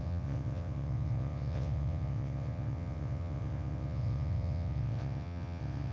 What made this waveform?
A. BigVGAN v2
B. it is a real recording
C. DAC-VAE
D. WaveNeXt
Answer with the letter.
D